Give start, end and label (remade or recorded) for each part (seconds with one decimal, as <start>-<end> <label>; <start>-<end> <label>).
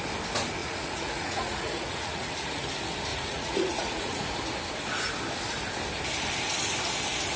0.0-0.6 recorded; 0.6-2.7 remade; 2.7-3.1 recorded; 3.1-4.3 remade; 4.3-7.4 recorded